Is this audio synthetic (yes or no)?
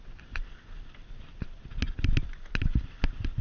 no